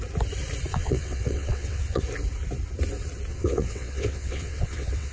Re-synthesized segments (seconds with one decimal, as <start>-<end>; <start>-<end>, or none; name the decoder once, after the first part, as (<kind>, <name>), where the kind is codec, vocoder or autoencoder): 0.7-2.0 (vocoder, WaveNeXt); 3.3-5.1